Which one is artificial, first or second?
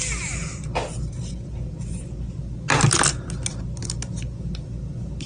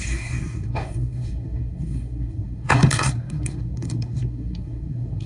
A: second